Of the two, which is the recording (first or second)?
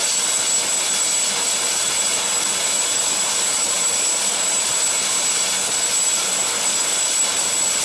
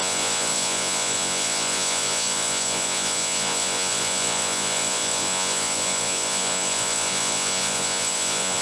first